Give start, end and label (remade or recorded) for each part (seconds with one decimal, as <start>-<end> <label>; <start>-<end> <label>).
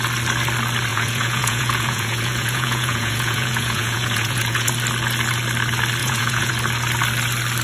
0.0-0.9 recorded; 0.9-4.7 remade; 4.7-6.0 recorded; 6.0-6.5 remade; 6.5-7.6 recorded